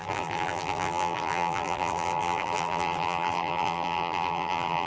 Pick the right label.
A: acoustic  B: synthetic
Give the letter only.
B